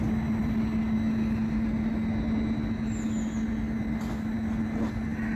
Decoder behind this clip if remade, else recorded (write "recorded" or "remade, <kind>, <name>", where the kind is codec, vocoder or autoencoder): recorded